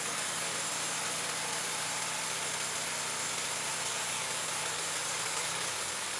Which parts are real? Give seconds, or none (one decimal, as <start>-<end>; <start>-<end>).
0.5-3.7